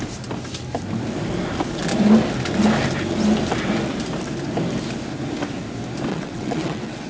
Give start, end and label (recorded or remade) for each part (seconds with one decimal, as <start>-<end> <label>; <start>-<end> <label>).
0.0-6.1 recorded; 6.1-7.1 remade